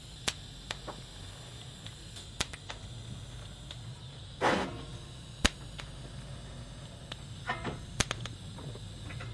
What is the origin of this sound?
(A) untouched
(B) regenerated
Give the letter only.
A